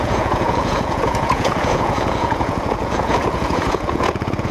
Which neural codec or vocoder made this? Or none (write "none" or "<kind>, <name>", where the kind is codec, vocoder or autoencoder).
vocoder, Vocos